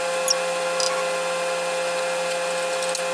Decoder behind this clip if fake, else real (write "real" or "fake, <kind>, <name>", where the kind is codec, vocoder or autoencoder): real